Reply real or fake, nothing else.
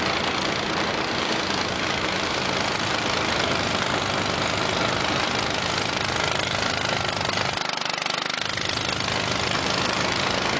real